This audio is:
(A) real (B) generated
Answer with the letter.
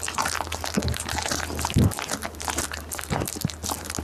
A